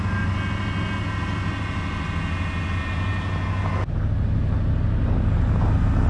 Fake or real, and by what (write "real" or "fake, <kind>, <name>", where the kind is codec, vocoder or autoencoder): real